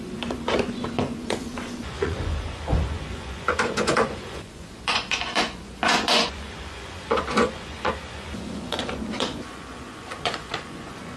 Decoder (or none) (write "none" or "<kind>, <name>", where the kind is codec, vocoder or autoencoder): vocoder, Vocos